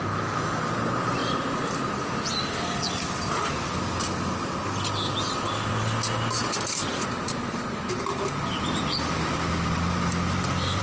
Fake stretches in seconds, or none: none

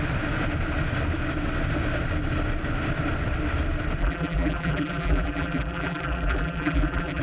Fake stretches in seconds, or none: 4.0-7.2 (vocoder, BigVGAN v2)

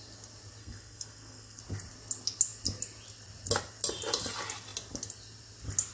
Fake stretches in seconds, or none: 0.6-1.6 (codec, SNAC)

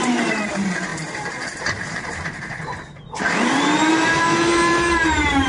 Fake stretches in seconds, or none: 0.0-5.5 (vocoder, BigVGAN v2)